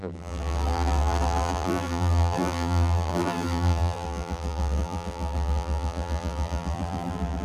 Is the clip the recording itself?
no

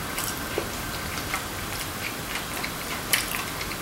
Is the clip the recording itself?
no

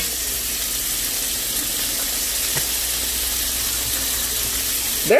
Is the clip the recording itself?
yes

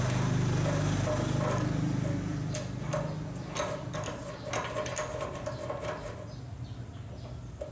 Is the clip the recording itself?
yes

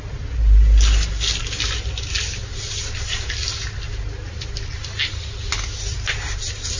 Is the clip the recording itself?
yes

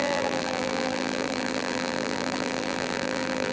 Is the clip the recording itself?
no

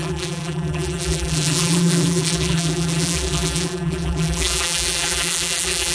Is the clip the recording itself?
no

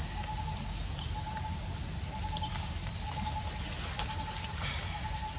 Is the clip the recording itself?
yes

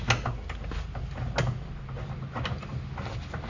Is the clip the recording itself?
yes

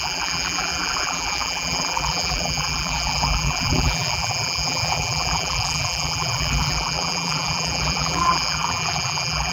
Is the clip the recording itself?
no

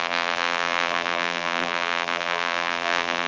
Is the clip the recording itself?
no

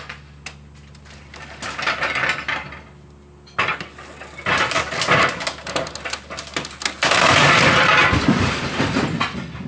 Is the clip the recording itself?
yes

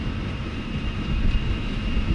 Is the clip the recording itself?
no